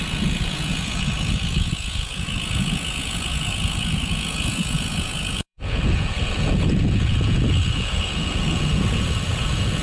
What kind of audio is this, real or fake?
fake